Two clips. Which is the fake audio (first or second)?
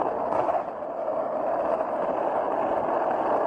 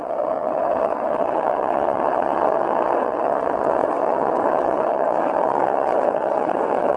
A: second